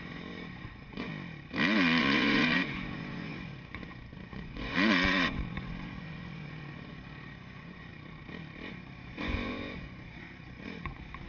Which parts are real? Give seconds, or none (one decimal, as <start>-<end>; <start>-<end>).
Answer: 1.1-2.0; 7.9-8.7